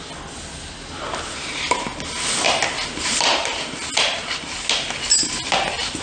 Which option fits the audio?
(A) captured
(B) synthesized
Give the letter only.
A